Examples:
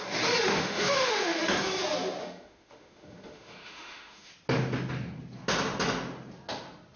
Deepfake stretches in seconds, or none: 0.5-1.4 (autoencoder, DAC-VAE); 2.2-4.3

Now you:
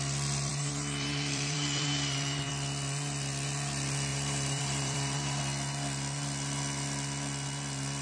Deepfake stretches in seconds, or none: 0.5-2.5 (vocoder, BigVGAN v2); 4.1-5.4

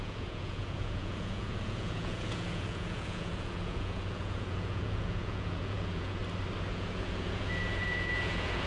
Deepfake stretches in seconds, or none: 0.0-6.2 (vocoder, Vocos); 6.7-8.7

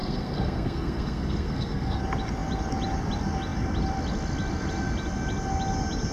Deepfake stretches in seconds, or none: 0.0-2.0 (codec, SNAC)